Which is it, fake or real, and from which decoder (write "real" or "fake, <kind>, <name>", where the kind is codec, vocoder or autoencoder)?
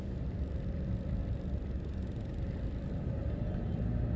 fake, vocoder, BigVGAN v2